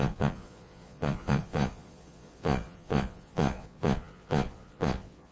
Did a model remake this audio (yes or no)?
yes